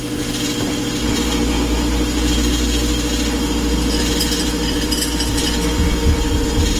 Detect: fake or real real